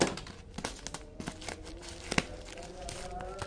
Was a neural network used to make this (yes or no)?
no